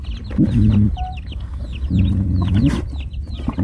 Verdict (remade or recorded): remade